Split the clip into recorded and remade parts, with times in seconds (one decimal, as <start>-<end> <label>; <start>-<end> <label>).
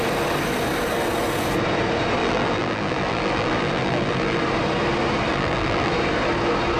0.0-2.2 recorded; 2.2-4.4 remade; 4.4-5.3 recorded; 5.3-5.9 remade; 5.9-6.8 recorded